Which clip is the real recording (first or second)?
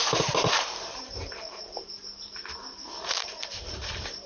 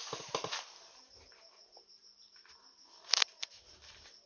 second